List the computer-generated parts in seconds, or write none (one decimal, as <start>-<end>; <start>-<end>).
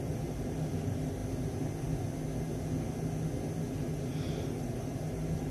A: 0.0-1.2; 3.7-5.5